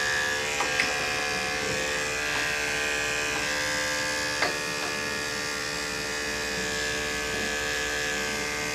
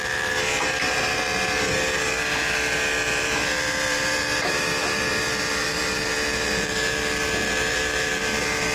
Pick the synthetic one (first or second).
second